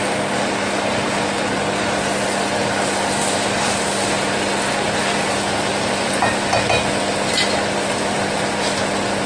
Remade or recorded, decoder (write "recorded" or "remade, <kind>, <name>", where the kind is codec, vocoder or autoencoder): recorded